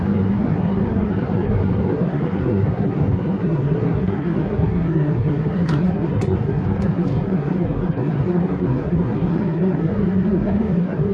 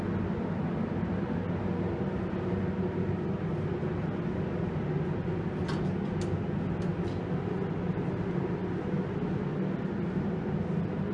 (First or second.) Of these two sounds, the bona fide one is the second